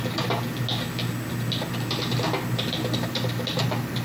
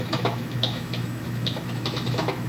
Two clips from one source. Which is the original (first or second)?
first